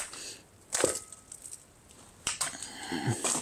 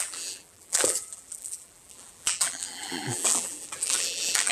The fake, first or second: second